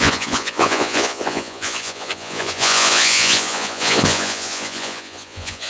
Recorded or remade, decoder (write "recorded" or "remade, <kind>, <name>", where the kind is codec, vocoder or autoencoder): remade, vocoder, Vocos